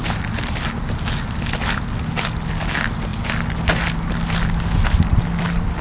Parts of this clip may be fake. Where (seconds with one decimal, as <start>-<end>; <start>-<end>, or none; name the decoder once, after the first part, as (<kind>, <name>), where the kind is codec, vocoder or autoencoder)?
5.1-5.8 (vocoder, BigVGAN v2)